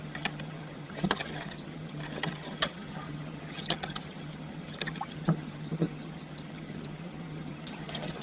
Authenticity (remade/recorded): remade